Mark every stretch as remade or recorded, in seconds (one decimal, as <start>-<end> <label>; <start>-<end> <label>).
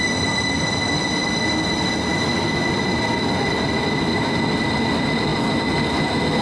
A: 0.0-6.4 recorded